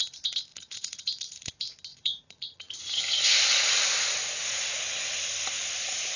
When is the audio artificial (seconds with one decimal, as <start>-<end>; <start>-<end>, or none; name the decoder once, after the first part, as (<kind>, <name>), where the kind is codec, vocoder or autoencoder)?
0.5-1.5 (vocoder, Vocos); 1.9-3.0